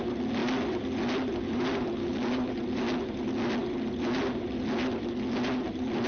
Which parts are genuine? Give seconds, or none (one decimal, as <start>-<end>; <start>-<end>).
0.0-2.0; 2.5-6.1